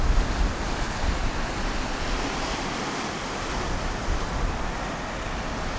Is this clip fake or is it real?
real